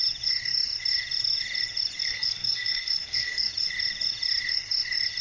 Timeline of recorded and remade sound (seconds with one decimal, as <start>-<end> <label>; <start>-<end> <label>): 0.0-2.0 recorded; 2.0-3.5 remade; 3.5-5.2 recorded